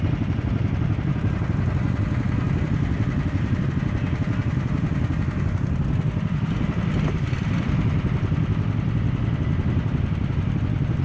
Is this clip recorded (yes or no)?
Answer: no